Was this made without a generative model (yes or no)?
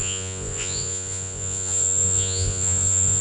no